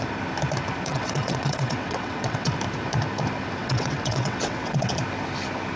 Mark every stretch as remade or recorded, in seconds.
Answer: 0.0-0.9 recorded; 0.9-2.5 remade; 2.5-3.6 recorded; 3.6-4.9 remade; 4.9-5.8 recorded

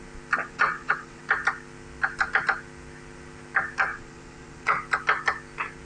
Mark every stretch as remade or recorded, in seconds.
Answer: 0.0-0.4 recorded; 0.4-1.2 remade; 1.2-3.9 recorded; 3.9-4.8 remade; 4.8-5.8 recorded

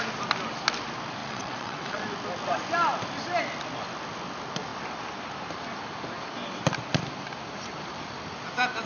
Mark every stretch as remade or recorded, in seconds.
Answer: 0.0-1.2 recorded; 1.2-2.0 remade; 2.0-8.9 recorded

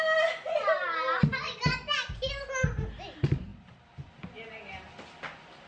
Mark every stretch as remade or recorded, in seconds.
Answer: 0.0-5.7 recorded